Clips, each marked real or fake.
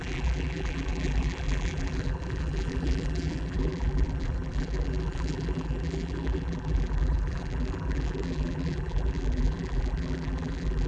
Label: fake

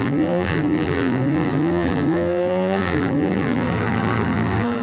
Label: fake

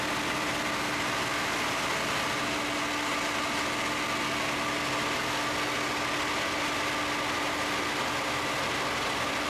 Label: real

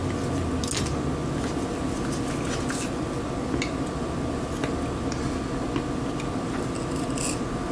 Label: real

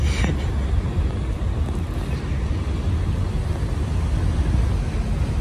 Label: real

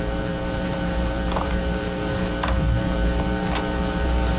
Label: fake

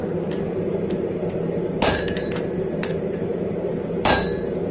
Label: fake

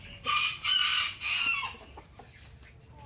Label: real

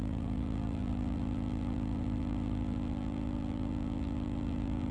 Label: fake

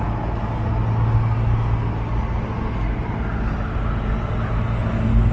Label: real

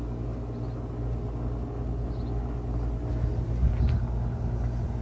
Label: real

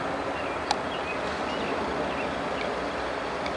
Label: real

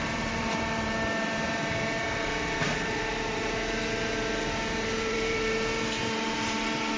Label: fake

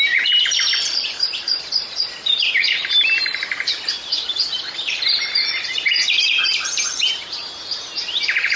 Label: fake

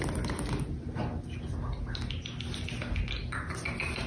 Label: real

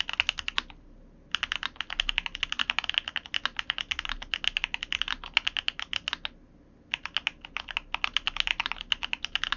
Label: real